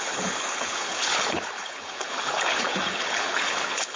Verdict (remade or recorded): remade